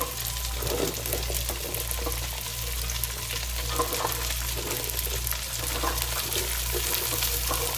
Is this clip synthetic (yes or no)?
no